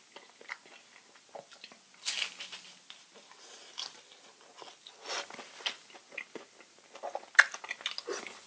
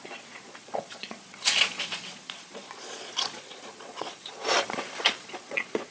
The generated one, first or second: second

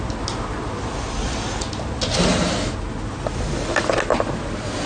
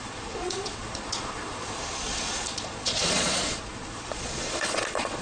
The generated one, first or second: second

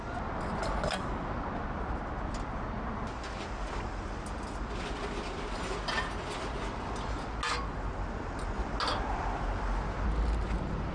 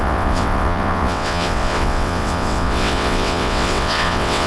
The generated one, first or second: second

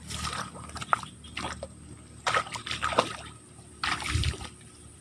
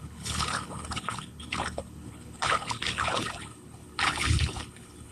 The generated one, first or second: second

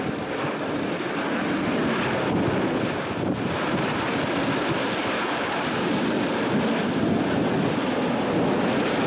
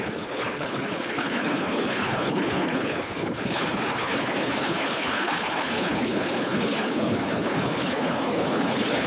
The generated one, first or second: second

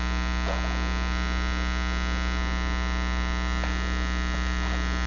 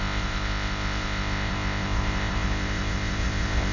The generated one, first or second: second